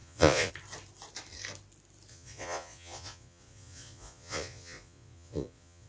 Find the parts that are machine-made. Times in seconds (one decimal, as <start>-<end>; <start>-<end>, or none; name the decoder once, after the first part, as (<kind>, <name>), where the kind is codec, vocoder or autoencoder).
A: 0.0-0.5 (vocoder, Vocos); 2.1-5.9